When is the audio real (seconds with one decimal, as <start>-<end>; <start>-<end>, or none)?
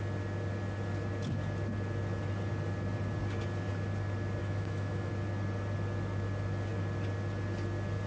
0.0-4.4; 5.1-8.1